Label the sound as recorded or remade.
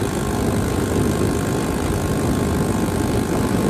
recorded